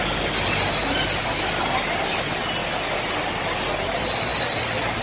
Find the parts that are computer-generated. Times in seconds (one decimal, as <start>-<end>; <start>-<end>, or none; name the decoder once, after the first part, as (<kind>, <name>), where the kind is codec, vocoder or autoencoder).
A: none